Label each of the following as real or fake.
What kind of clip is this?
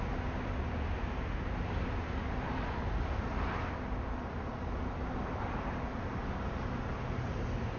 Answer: real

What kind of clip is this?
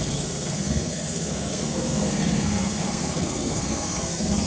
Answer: fake